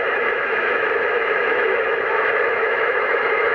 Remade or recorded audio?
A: remade